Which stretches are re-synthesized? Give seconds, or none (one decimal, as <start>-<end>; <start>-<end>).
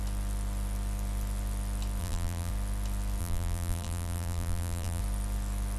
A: 2.0-2.5; 3.2-5.0